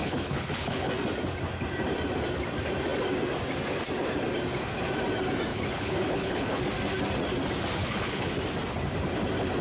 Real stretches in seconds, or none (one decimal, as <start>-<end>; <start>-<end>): 0.9-5.5; 6.6-7.8; 8.3-9.6